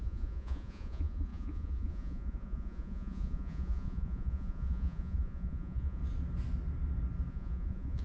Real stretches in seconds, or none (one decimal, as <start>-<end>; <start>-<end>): 6.0-7.3